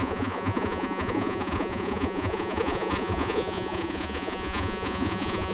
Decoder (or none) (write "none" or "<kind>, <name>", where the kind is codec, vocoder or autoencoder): vocoder, Vocos